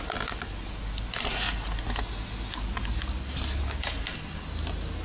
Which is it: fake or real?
real